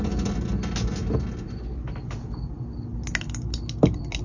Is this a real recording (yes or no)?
yes